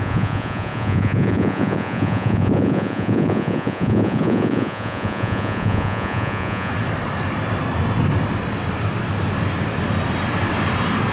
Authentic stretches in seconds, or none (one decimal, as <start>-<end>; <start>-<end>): 6.7-11.1